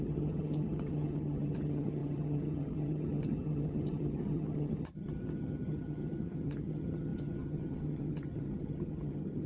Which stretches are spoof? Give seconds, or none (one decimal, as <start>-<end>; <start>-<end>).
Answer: 0.0-9.5